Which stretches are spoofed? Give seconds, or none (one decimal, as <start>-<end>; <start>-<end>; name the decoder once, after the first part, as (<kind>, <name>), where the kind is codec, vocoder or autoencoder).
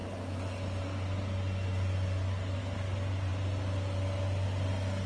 none